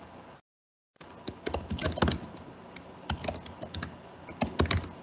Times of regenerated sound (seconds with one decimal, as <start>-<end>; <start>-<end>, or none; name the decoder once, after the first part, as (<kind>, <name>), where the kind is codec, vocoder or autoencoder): none